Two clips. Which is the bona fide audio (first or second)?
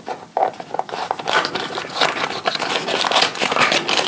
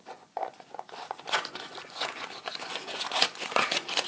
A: first